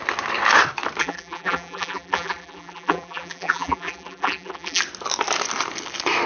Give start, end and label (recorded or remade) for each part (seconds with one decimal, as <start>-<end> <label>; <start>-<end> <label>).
0.0-1.0 recorded; 1.0-4.8 remade; 4.8-6.3 recorded